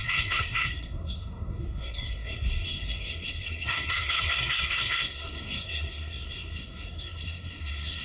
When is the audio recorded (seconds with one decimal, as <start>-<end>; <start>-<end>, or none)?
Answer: none